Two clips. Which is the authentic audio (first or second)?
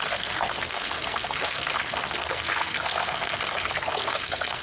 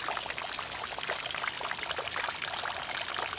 second